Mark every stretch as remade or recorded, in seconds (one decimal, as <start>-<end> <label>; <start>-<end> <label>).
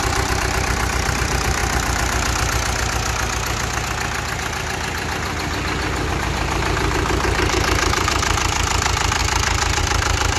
0.0-1.6 remade; 1.6-6.1 recorded; 6.1-9.2 remade; 9.2-9.8 recorded; 9.8-10.4 remade